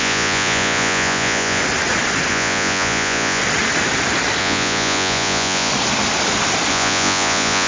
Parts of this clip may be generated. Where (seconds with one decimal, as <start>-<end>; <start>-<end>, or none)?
0.0-1.6; 2.3-3.4; 4.4-5.7; 6.7-7.7

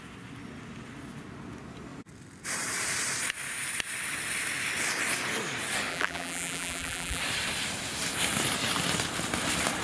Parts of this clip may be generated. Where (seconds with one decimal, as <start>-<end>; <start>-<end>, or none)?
5.9-7.2

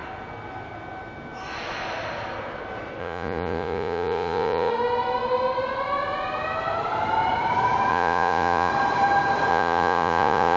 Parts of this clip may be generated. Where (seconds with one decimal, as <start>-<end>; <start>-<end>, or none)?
3.0-4.7; 7.9-8.7; 9.5-10.6

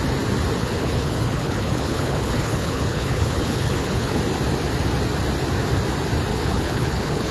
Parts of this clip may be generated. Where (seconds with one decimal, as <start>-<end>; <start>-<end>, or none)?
0.6-4.2; 6.3-7.3